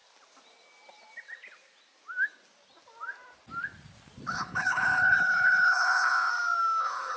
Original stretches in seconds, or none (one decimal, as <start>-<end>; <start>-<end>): 0.0-4.3; 6.3-6.8